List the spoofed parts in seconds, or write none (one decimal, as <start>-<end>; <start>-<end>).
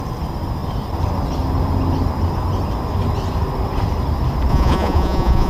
4.5-5.5